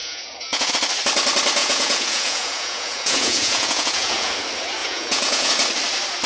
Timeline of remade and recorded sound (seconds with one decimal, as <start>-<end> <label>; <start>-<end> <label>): 0.0-0.7 remade; 0.7-1.6 recorded; 1.6-4.3 remade; 4.3-4.8 recorded; 4.8-5.5 remade; 5.5-6.3 recorded

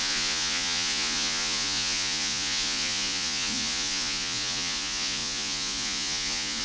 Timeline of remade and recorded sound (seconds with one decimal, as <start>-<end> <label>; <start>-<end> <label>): 0.0-6.6 remade

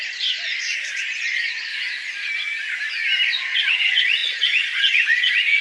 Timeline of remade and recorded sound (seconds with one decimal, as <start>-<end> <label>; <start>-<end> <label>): 0.0-1.7 remade; 1.7-3.3 recorded; 3.3-5.6 remade

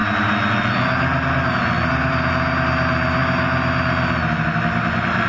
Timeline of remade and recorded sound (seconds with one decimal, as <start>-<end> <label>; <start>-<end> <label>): 0.0-5.3 recorded

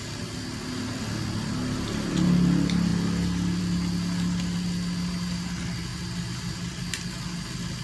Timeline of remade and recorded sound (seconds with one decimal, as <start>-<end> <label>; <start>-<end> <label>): 0.0-7.8 recorded

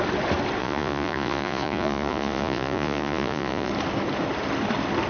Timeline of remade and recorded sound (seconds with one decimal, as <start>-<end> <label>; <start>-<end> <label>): 0.0-0.6 recorded; 0.6-3.7 remade; 3.7-5.1 recorded

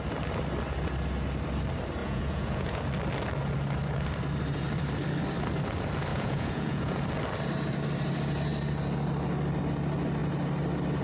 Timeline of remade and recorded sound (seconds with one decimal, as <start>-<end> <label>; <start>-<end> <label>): 0.0-2.0 recorded; 2.0-2.8 remade; 2.8-6.1 recorded; 6.1-7.0 remade; 7.0-11.0 recorded